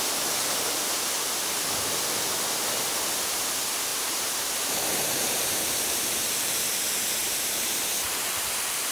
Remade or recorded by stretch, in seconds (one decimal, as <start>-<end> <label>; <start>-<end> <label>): 0.0-3.9 recorded; 3.9-6.8 remade; 6.8-7.2 recorded; 7.2-8.3 remade; 8.3-8.9 recorded